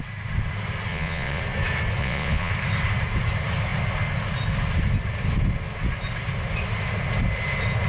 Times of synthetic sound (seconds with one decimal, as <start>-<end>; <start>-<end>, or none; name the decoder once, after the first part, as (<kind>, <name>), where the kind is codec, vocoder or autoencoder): 0.9-1.4 (vocoder, Vocos); 2.0-2.5